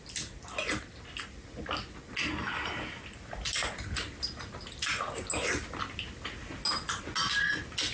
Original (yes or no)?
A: yes